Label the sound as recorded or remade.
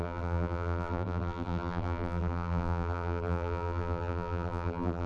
remade